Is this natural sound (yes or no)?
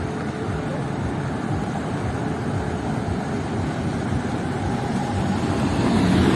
yes